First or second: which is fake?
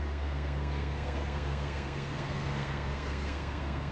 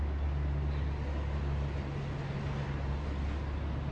first